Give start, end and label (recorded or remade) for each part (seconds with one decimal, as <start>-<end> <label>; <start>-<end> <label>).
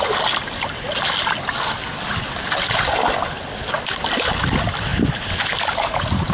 0.0-6.3 recorded